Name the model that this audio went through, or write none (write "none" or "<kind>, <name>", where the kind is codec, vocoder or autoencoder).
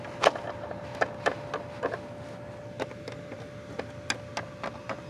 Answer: none